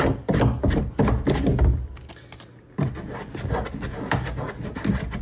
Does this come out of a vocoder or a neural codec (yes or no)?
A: no